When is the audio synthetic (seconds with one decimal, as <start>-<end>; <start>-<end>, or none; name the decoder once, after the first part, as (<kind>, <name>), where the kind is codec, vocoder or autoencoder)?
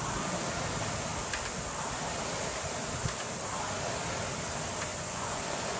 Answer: 4.9-5.8 (vocoder, Vocos)